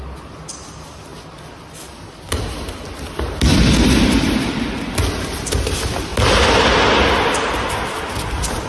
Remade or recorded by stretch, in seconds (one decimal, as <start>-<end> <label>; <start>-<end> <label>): 0.0-8.7 recorded